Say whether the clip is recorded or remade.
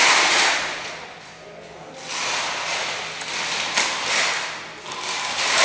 recorded